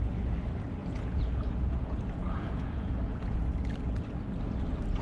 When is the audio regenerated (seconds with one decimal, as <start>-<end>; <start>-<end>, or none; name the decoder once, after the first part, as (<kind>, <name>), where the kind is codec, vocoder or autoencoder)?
0.8-3.5 (vocoder, Vocos)

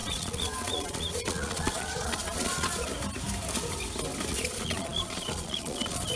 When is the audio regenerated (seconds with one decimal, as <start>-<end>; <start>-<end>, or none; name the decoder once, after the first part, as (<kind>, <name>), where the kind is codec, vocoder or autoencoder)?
0.0-2.9 (vocoder, Vocos); 4.3-6.2

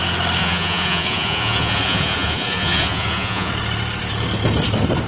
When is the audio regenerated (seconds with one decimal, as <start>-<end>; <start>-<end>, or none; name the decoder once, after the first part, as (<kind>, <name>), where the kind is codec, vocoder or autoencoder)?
0.4-3.5 (vocoder, Vocos)

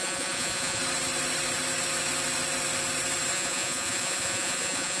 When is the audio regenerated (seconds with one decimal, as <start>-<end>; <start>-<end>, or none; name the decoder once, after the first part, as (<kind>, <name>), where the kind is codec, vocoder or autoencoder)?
0.0-0.8 (vocoder, Vocos); 3.3-5.0

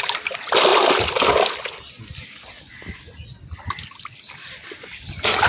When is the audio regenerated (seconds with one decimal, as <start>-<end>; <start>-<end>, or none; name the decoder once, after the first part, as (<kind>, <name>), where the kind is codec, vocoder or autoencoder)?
none